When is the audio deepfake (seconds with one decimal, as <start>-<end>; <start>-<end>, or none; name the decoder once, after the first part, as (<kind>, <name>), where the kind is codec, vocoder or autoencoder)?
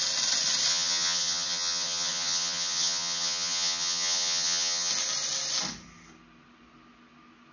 0.7-4.9 (vocoder, HiFi-GAN)